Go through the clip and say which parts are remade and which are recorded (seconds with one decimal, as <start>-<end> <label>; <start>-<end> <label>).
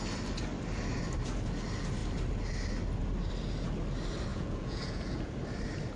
0.0-4.3 recorded; 4.3-5.3 remade; 5.3-6.0 recorded